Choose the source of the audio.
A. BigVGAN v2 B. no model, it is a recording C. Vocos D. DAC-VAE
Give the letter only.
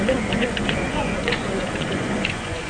C